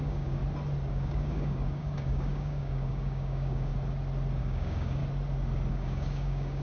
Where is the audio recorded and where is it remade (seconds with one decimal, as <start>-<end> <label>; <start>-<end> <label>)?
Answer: 0.0-0.4 remade; 0.4-0.9 recorded; 0.9-3.7 remade; 3.7-4.4 recorded; 4.4-5.0 remade; 5.0-5.7 recorded; 5.7-6.6 remade